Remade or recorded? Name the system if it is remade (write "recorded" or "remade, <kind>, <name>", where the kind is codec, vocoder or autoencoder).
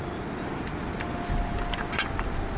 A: recorded